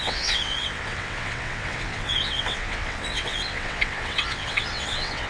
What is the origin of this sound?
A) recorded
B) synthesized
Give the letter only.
B